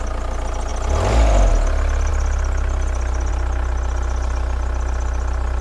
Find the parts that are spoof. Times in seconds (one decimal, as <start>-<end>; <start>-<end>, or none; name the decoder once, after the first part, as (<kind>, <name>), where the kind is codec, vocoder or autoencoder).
none